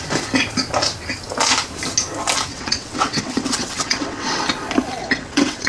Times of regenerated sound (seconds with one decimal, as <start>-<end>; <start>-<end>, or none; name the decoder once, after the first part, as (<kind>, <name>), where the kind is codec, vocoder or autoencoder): 2.5-4.4 (vocoder, WaveNeXt); 5.0-5.7